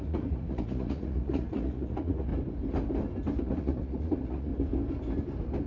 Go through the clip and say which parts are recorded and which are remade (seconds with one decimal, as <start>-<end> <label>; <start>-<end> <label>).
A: 0.0-2.3 remade; 2.3-3.4 recorded; 3.4-4.5 remade; 4.5-5.7 recorded